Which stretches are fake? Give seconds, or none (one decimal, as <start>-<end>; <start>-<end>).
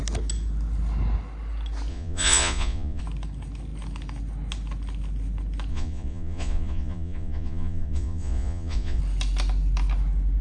1.9-3.0; 5.7-9.0